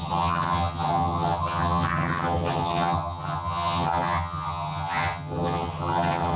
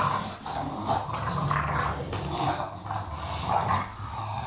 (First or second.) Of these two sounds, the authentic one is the second